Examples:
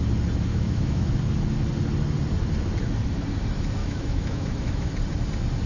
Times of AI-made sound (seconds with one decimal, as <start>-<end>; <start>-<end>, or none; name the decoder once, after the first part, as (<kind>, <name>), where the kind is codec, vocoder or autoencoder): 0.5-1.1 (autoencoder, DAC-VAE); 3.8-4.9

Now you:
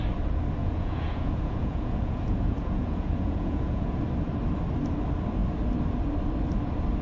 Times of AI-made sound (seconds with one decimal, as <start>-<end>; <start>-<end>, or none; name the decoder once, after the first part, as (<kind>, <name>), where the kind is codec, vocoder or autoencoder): 0.6-4.0 (vocoder, Vocos)

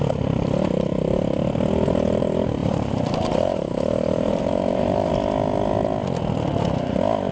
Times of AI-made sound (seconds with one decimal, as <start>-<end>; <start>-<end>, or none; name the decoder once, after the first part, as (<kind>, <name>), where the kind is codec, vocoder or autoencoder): 2.6-5.1 (vocoder, BigVGAN v2)

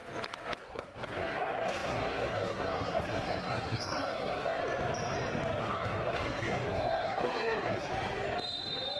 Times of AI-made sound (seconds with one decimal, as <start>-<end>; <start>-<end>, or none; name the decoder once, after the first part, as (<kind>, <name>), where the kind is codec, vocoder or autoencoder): 0.6-4.6 (codec, SNAC); 5.6-7.9

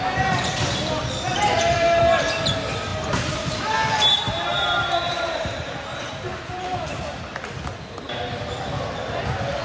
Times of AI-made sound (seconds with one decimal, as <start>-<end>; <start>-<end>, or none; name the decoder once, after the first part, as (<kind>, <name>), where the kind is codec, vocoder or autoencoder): 1.3-2.0 (vocoder, BigVGAN v2); 2.9-7.2

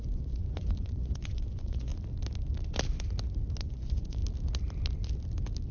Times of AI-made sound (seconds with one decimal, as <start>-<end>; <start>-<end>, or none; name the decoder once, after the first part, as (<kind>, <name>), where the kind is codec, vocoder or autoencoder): 0.0-1.9 (vocoder, Vocos); 3.6-4.2